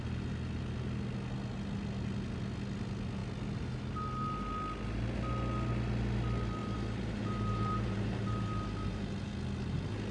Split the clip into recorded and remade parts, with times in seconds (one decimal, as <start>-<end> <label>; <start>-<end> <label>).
0.0-6.6 recorded; 6.6-9.3 remade; 9.3-10.1 recorded